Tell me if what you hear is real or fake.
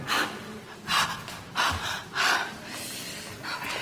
fake